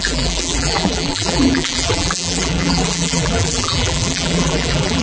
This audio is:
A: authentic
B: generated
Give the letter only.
B